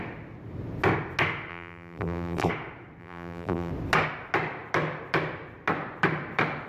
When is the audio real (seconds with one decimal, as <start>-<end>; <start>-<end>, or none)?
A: 0.0-1.5; 2.5-3.0; 3.7-6.7